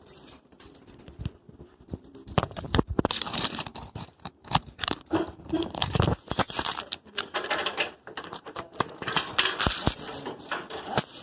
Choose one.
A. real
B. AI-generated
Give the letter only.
B